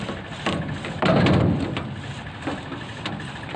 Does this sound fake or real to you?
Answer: real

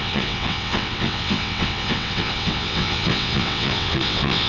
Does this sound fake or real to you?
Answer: fake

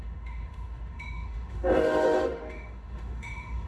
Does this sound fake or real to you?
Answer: fake